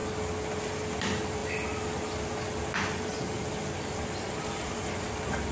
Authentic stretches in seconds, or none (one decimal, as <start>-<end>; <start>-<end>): 0.0-5.5